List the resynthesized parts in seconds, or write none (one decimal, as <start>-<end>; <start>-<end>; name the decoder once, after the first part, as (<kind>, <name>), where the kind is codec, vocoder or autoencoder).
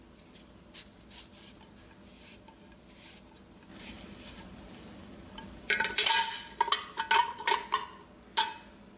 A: 3.7-6.1 (vocoder, BigVGAN v2)